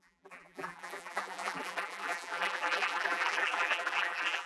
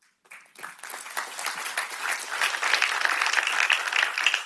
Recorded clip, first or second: second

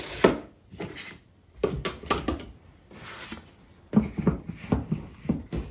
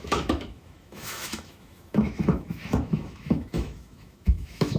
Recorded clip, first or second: first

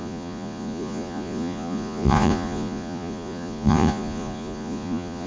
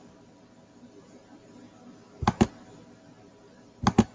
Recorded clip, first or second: second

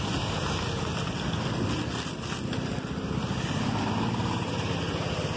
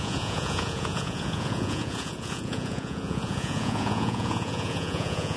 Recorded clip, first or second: first